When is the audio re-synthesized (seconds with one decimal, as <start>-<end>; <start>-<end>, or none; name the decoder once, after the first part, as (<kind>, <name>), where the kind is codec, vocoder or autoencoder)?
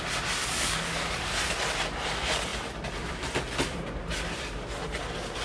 0.4-1.3 (codec, DAC)